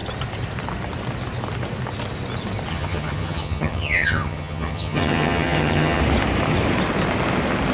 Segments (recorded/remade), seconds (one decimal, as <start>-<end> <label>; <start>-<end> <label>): 0.0-2.7 recorded; 2.7-6.0 remade; 6.0-7.7 recorded